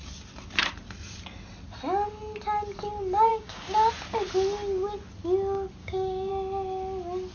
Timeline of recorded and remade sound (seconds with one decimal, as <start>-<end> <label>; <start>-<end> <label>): 0.0-3.3 recorded; 3.3-3.9 remade; 3.9-5.8 recorded; 5.8-6.3 remade; 6.3-7.3 recorded